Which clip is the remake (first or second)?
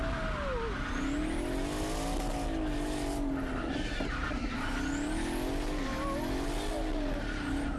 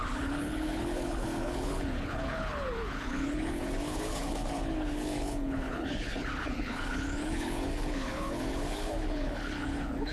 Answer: second